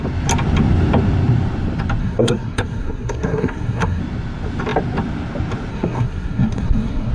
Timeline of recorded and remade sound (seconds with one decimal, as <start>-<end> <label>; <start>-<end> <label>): 0.0-2.0 recorded; 2.0-4.0 remade; 4.0-5.7 recorded; 5.7-7.1 remade